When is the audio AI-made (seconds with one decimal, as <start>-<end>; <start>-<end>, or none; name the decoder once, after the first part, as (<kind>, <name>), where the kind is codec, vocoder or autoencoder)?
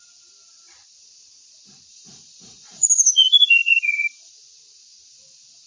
1.9-4.3 (vocoder, Vocos)